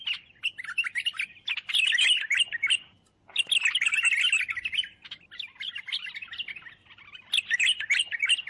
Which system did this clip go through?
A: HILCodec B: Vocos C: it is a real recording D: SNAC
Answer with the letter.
C